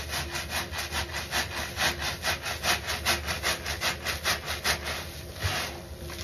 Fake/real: real